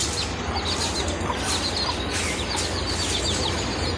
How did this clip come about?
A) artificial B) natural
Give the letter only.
B